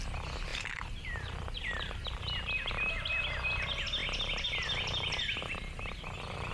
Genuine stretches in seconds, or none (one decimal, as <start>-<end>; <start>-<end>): 0.0-0.5; 2.9-6.5